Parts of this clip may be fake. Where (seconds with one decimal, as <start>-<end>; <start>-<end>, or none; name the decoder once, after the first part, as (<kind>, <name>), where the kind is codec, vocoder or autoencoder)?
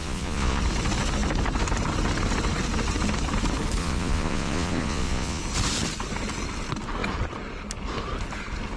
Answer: 0.0-0.6 (vocoder, Vocos); 3.8-5.4